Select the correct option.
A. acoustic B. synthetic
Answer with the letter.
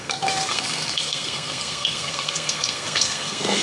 B